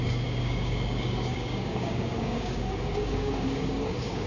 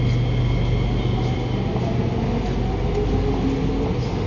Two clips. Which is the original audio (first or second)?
second